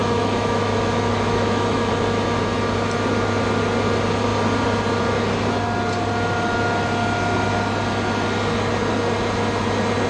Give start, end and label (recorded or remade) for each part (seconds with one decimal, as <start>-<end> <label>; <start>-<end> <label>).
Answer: 0.0-1.9 remade; 1.9-10.1 recorded